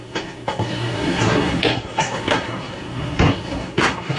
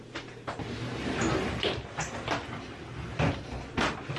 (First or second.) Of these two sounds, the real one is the second